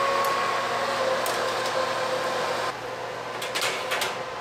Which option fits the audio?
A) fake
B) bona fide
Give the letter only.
B